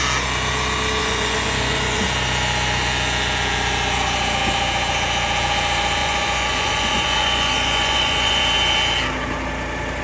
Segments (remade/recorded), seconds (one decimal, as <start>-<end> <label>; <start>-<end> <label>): 0.0-1.0 recorded; 1.0-2.0 remade; 2.0-6.0 recorded; 6.0-8.4 remade; 8.4-10.0 recorded